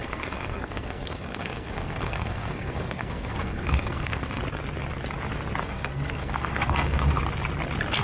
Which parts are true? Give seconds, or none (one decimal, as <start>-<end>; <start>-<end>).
4.4-5.6; 7.2-8.0